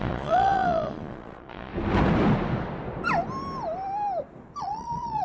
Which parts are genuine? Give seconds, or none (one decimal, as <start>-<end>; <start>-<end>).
1.7-4.6